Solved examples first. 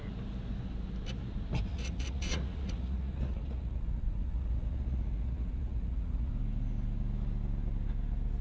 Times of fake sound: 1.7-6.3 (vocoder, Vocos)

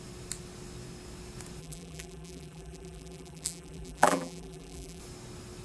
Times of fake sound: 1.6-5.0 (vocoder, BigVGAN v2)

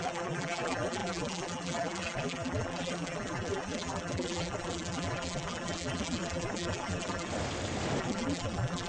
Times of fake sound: 0.0-7.3 (vocoder, BigVGAN v2); 8.0-8.9